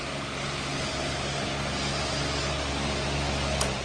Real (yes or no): yes